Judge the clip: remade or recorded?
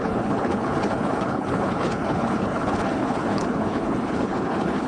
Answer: remade